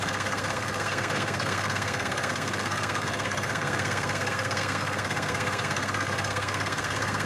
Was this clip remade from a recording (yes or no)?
yes